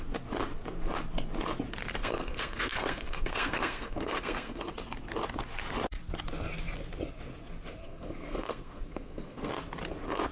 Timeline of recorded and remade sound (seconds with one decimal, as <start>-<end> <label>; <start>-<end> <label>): 0.0-2.0 recorded; 2.0-4.7 remade; 4.7-7.8 recorded; 7.8-9.5 remade; 9.5-10.3 recorded